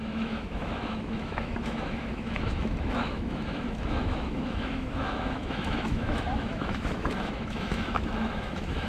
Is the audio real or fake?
fake